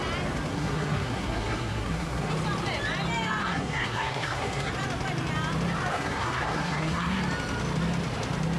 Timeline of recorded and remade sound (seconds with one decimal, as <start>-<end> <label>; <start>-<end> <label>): 0.0-0.5 recorded; 0.5-2.3 remade; 2.3-3.4 recorded; 3.4-4.7 remade; 4.7-5.9 recorded; 5.9-7.2 remade; 7.2-8.6 recorded